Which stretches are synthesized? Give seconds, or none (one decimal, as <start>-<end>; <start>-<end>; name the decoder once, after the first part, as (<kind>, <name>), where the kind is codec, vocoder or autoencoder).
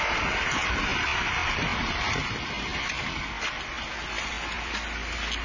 none